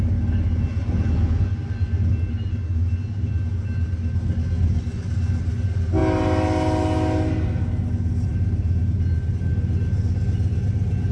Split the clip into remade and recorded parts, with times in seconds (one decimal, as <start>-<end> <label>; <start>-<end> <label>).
0.0-0.7 recorded; 0.7-1.5 remade; 1.5-11.1 recorded